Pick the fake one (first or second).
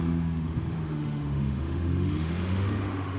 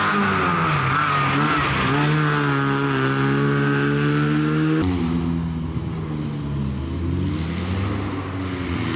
first